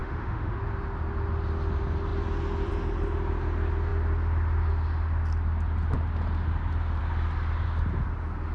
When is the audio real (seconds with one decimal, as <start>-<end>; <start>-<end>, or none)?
0.6-8.5